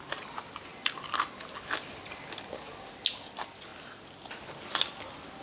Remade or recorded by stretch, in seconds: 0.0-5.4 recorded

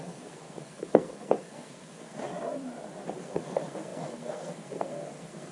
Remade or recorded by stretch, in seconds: 0.0-2.3 remade; 2.3-3.2 recorded; 3.2-5.5 remade

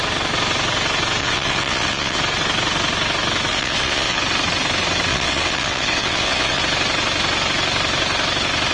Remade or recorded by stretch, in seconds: 0.0-1.2 recorded; 1.2-2.2 remade; 2.2-3.5 recorded; 3.5-4.2 remade; 4.2-5.1 recorded; 5.1-6.6 remade; 6.6-8.7 recorded

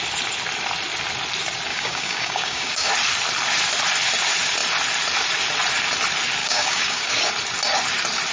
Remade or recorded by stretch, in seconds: 0.0-1.7 recorded; 1.7-2.9 remade; 2.9-6.4 recorded; 6.4-7.1 remade; 7.1-8.3 recorded

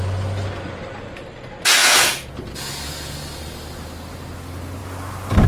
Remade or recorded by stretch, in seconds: 0.0-1.8 recorded; 1.8-2.3 remade; 2.3-5.5 recorded